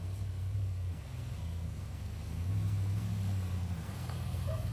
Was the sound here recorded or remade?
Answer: remade